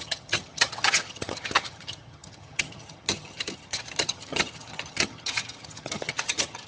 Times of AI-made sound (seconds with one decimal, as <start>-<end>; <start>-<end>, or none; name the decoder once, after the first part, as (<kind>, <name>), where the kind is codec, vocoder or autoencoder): 0.0-6.7 (vocoder, HiFi-GAN)